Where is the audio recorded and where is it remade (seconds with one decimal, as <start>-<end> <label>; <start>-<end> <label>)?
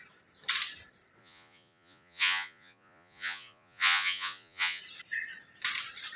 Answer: 0.0-1.2 recorded; 1.2-4.8 remade; 4.8-6.2 recorded